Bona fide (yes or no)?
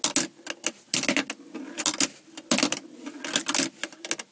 yes